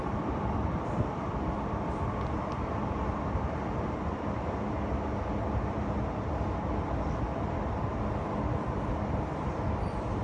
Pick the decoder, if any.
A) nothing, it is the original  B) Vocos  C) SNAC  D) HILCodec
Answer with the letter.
A